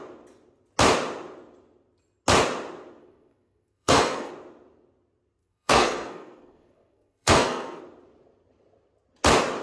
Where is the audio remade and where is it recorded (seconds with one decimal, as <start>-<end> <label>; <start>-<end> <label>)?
0.0-3.0 recorded; 3.0-4.3 remade; 4.3-5.4 recorded; 5.4-7.8 remade; 7.8-9.6 recorded